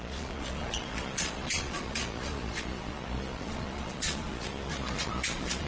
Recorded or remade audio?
remade